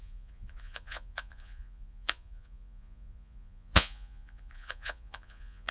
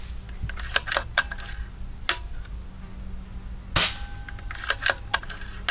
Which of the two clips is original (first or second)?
second